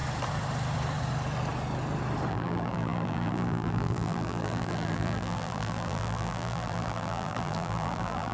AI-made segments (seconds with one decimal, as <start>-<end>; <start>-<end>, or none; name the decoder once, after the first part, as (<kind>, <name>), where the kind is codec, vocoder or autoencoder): 2.3-8.3 (vocoder, BigVGAN v2)